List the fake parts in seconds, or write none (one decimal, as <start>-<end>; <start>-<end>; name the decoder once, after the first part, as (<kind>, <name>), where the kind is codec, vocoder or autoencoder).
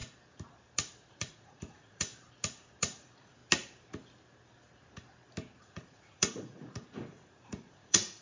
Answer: 1.1-2.1 (vocoder, Vocos); 2.8-3.4; 5.6-8.2